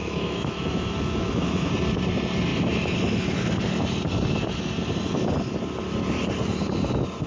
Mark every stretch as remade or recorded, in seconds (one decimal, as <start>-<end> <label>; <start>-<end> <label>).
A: 0.0-1.7 remade; 1.7-7.3 recorded

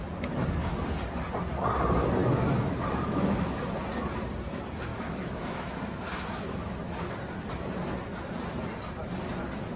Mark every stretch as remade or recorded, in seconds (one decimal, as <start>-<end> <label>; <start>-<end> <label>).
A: 0.0-2.2 recorded; 2.2-3.5 remade; 3.5-4.9 recorded; 4.9-7.1 remade; 7.1-9.8 recorded

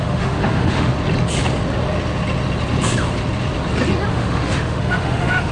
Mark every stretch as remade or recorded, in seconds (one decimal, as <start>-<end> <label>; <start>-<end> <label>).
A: 0.0-0.9 remade; 0.9-4.1 recorded; 4.1-5.5 remade

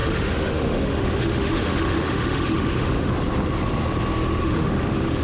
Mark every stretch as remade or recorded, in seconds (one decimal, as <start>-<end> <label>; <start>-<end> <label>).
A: 0.0-3.1 remade; 3.1-4.4 recorded; 4.4-5.2 remade

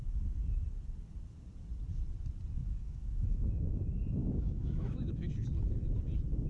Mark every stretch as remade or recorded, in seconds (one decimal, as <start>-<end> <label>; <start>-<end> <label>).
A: 0.0-2.6 recorded; 2.6-3.8 remade; 3.8-4.2 recorded; 4.2-5.3 remade; 5.3-6.5 recorded